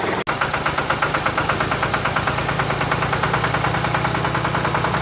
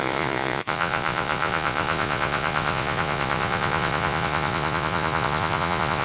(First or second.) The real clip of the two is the first